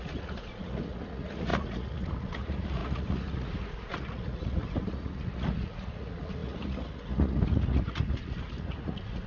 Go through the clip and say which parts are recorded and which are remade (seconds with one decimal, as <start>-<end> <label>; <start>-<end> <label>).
0.0-9.3 remade